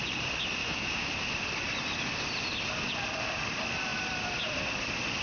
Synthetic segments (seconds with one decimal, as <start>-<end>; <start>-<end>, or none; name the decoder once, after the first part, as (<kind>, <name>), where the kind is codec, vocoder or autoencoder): 0.6-1.1 (autoencoder, DAC-VAE)